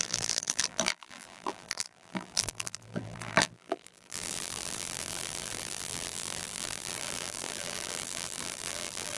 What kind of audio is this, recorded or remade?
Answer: remade